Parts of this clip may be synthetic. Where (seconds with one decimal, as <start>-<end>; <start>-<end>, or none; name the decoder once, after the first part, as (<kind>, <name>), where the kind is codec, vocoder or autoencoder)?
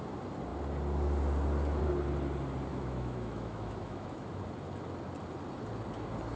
2.7-4.4 (autoencoder, DAC-VAE)